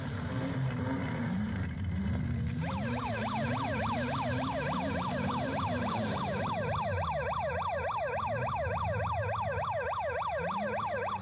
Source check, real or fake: fake